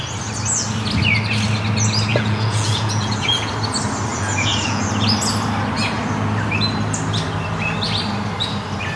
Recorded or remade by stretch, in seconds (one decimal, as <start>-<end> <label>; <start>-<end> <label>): 0.0-2.1 recorded; 2.1-3.5 remade; 3.5-4.1 recorded; 4.1-4.8 remade; 4.8-9.0 recorded

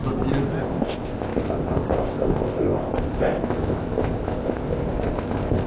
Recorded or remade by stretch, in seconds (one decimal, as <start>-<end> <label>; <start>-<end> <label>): 0.0-0.6 recorded; 0.6-5.7 remade

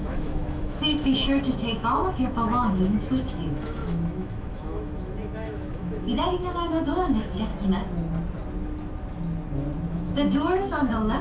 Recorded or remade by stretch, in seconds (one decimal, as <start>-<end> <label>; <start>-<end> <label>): 0.0-7.5 remade; 7.5-9.9 recorded; 9.9-11.2 remade

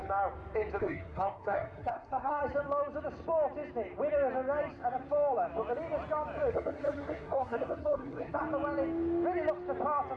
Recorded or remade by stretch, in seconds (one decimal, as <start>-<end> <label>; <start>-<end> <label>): 0.0-0.8 recorded; 0.8-2.4 remade; 2.4-6.5 recorded; 6.5-8.4 remade; 8.4-10.2 recorded

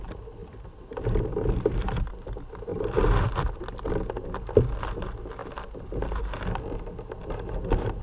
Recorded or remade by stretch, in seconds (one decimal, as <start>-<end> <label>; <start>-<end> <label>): 0.0-0.4 recorded; 0.4-2.1 remade; 2.1-2.7 recorded; 2.7-3.9 remade; 3.9-8.0 recorded

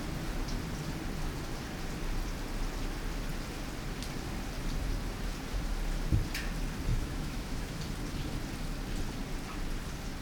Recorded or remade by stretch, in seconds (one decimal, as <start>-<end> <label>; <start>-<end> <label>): 0.0-6.9 recorded; 6.9-7.8 remade; 7.8-10.2 recorded

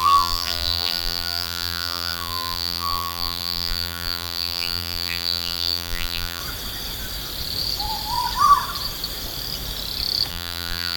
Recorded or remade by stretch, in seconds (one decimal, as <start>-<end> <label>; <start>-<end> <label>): 0.0-6.4 remade; 6.4-10.3 recorded; 10.3-11.0 remade

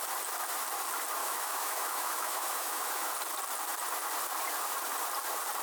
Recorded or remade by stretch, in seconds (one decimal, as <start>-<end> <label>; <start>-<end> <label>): 0.0-1.2 recorded; 1.2-3.1 remade; 3.1-5.6 recorded